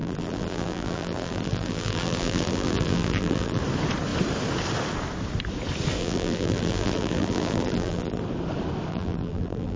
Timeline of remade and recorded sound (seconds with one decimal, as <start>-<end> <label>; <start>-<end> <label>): 0.0-3.6 remade; 3.6-6.0 recorded; 6.0-8.2 remade; 8.2-8.9 recorded; 8.9-9.8 remade